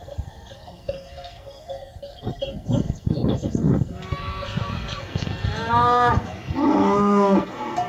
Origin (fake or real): fake